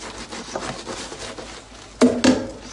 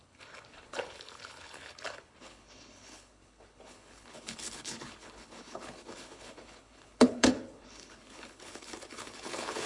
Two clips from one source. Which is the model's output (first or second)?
second